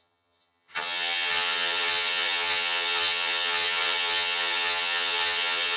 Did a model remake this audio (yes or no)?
yes